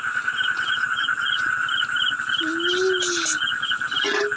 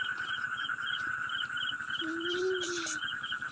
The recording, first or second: first